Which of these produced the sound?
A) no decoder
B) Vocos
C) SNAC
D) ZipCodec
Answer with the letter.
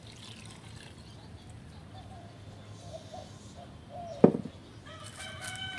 A